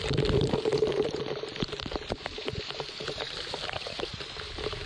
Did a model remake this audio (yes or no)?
yes